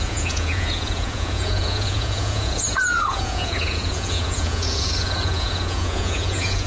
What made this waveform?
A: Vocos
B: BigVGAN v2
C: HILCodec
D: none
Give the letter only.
A